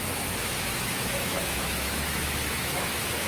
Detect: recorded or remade remade